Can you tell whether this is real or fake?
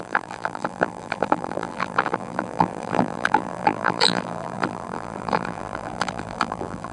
fake